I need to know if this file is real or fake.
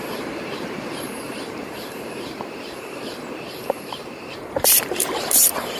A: fake